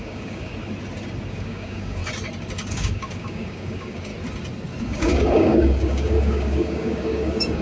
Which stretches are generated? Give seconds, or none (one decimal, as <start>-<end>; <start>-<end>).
0.0-0.5; 1.3-2.0; 2.7-4.1; 4.8-7.6